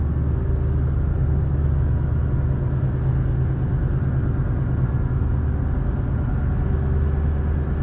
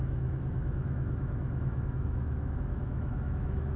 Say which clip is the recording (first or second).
first